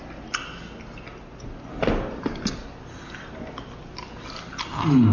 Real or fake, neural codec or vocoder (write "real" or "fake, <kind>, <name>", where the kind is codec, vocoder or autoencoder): real